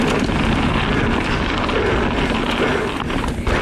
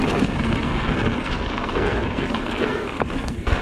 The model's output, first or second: second